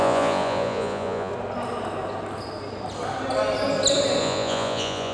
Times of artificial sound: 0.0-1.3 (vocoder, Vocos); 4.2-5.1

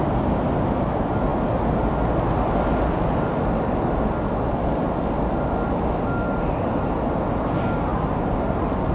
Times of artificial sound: none

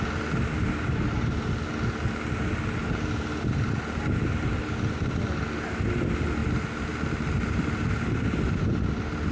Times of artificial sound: none

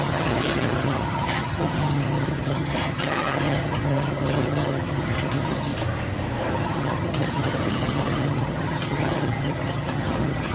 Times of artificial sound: 0.0-5.7 (vocoder, HiFi-GAN); 6.5-10.5

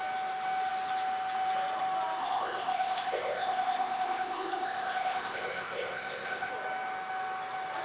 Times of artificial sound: 2.2-6.5 (codec, ZipCodec)

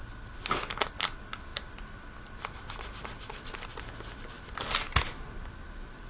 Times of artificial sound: none